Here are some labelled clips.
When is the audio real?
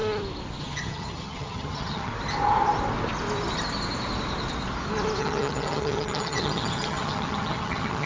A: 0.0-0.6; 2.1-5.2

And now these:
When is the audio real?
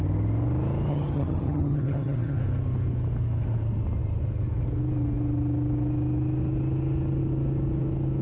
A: 0.0-0.9; 2.4-8.2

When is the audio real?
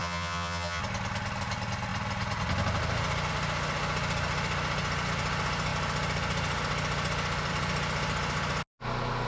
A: 0.8-9.3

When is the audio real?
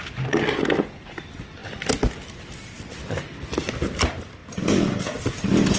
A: 0.0-5.8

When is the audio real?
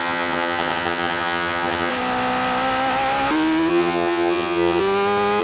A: 1.9-3.7; 4.8-5.4